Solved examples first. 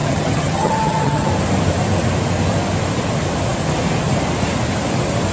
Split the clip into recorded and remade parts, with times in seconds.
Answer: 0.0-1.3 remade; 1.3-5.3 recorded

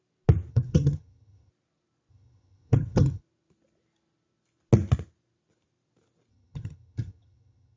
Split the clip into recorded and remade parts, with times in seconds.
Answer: 0.0-0.5 recorded; 0.5-1.5 remade; 1.5-2.1 recorded; 2.1-3.2 remade; 3.2-6.3 recorded; 6.3-7.8 remade